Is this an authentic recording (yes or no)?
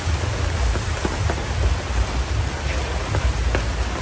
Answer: yes